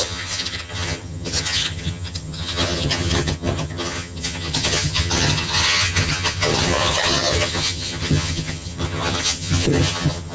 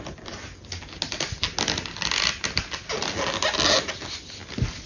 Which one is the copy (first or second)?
first